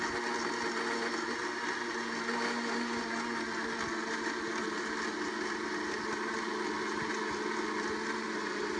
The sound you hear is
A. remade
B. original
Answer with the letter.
B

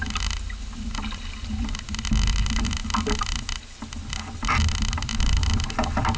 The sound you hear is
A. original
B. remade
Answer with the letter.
A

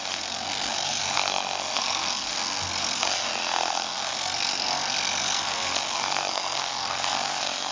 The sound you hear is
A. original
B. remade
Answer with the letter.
B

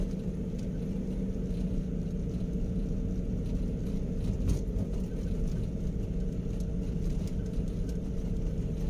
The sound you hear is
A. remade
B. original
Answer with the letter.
B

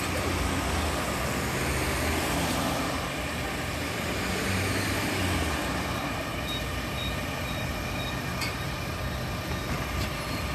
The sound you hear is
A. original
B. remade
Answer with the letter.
A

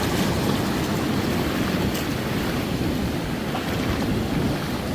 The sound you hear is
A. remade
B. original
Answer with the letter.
B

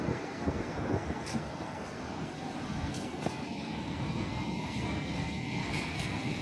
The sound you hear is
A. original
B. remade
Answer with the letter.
B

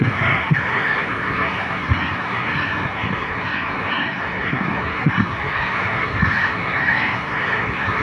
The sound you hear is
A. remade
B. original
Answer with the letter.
A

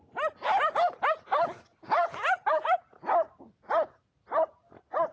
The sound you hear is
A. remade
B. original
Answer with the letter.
B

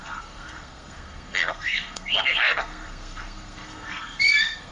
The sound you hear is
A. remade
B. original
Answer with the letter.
A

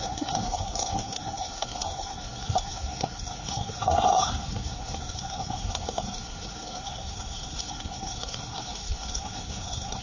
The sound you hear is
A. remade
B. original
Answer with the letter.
A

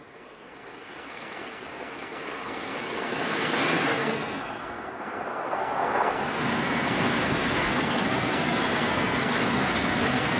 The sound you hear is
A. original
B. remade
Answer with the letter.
B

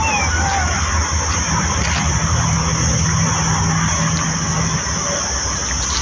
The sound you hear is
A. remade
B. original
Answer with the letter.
B